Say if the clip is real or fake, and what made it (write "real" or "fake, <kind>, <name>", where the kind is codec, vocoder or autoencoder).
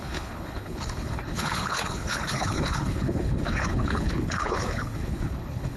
fake, codec, HILCodec